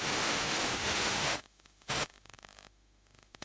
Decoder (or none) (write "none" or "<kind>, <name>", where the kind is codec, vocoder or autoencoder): autoencoder, DAC-VAE